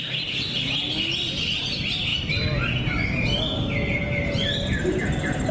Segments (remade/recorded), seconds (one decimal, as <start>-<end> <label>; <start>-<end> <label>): 0.0-5.5 recorded